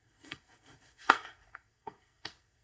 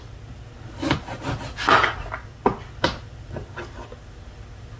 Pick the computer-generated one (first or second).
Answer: first